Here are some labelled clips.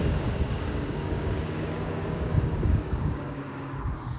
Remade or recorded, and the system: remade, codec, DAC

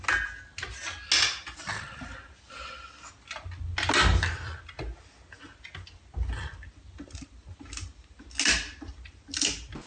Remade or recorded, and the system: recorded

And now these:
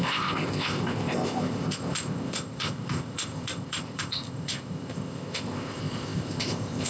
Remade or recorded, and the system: remade, codec, ZipCodec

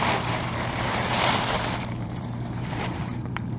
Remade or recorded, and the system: remade, vocoder, BigVGAN v2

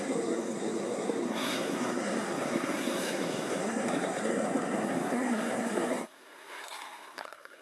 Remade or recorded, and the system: remade, codec, SNAC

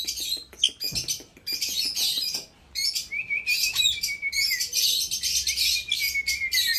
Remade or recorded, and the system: recorded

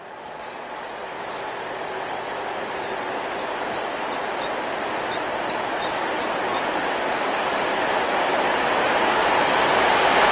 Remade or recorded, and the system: recorded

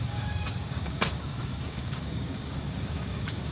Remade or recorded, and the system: remade, codec, DAC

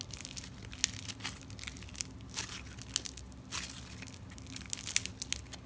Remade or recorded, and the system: recorded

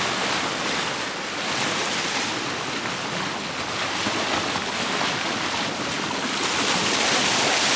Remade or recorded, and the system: recorded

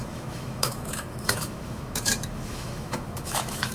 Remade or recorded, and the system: remade, autoencoder, DAC-VAE